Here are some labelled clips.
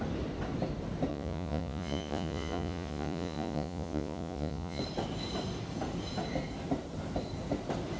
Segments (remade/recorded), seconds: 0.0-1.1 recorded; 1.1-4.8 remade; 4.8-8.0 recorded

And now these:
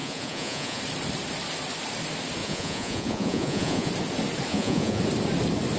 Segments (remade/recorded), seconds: 0.0-0.8 remade; 0.8-2.4 recorded; 2.4-3.9 remade; 3.9-4.5 recorded; 4.5-5.0 remade; 5.0-5.8 recorded

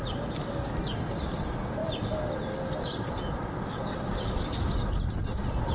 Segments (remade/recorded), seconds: 0.0-5.7 recorded